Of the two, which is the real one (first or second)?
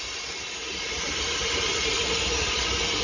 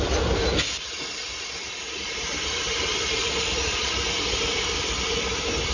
first